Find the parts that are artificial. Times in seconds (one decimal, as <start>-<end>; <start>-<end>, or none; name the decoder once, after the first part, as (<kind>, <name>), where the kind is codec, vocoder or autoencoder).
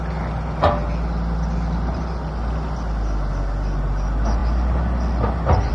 none